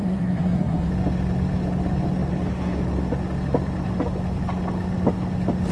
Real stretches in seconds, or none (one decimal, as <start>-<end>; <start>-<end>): 0.9-5.7